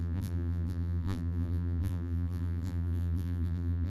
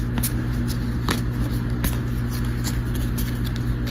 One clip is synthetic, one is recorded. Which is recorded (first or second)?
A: second